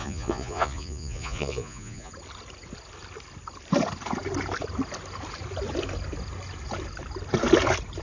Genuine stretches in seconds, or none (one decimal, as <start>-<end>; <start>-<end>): 2.1-8.0